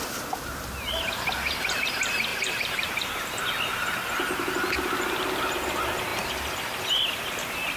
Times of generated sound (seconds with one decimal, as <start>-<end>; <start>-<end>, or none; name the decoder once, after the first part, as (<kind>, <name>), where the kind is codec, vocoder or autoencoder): 2.3-3.4 (vocoder, BigVGAN v2); 6.1-6.8